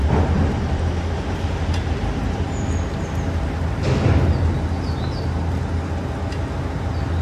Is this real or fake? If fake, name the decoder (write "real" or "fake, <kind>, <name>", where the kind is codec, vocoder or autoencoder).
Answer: real